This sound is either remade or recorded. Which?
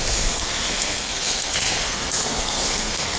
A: remade